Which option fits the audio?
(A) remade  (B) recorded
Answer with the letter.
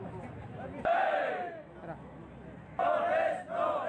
B